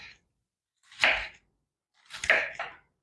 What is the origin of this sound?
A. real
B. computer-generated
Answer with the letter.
A